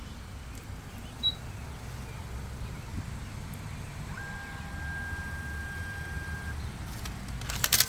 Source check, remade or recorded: recorded